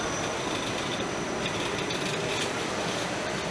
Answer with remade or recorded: remade